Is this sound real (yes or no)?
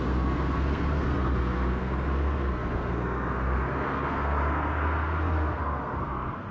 no